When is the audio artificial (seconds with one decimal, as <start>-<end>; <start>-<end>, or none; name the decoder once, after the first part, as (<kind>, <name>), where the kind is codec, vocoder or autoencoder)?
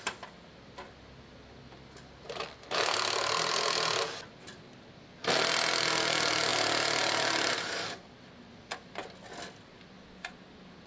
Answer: none